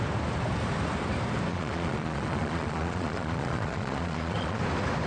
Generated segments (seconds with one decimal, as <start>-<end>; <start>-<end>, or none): 1.5-4.6